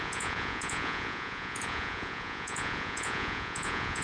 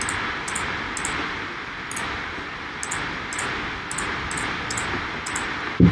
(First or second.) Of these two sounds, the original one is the second